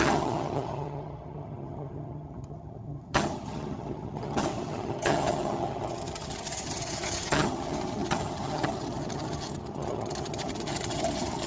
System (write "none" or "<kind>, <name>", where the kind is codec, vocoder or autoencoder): vocoder, HiFi-GAN